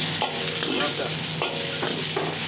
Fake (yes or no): no